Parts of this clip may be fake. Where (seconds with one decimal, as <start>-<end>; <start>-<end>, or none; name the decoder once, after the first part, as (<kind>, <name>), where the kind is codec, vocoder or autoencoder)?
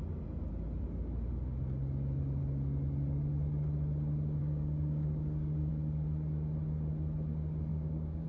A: 4.4-5.7 (codec, DAC); 7.7-8.3